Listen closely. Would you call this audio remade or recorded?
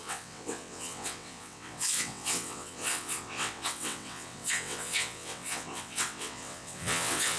remade